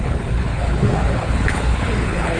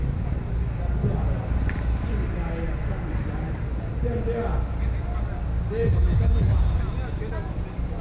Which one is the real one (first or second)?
second